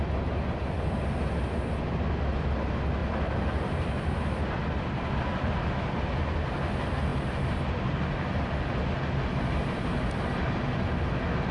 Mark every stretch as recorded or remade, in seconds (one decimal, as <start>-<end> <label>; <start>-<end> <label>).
0.0-3.0 recorded; 3.0-4.4 remade; 4.4-11.5 recorded